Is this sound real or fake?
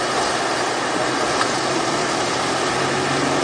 real